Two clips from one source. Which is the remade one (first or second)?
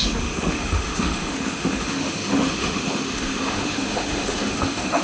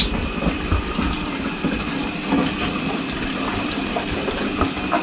first